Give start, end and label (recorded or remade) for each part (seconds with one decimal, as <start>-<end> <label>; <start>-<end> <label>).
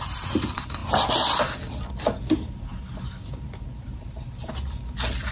0.0-5.3 recorded